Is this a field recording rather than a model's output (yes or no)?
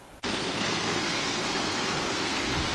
no